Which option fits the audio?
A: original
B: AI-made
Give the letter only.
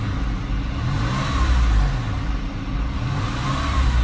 A